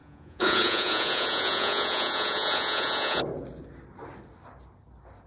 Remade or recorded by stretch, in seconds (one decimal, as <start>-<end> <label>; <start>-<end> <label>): 0.0-3.2 remade; 3.2-5.3 recorded